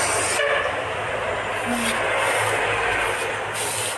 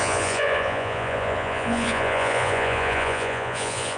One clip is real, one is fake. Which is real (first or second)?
first